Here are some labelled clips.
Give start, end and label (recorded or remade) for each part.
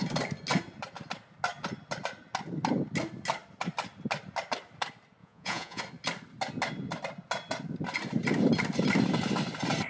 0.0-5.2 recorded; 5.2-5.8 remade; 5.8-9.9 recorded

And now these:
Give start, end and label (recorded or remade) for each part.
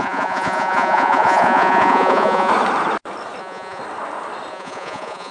0.0-2.5 remade; 2.5-3.4 recorded; 3.4-3.8 remade; 3.8-4.5 recorded; 4.5-5.3 remade